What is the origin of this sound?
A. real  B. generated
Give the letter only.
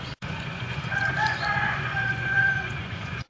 B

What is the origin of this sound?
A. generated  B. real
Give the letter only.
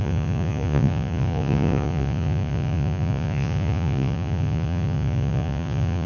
A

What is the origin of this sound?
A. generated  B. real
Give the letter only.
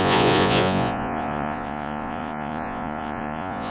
A